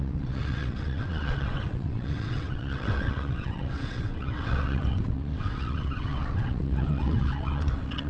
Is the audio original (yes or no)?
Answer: no